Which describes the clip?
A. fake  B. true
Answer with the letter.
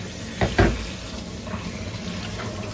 B